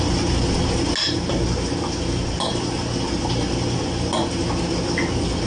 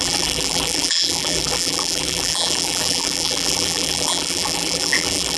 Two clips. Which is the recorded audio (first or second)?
first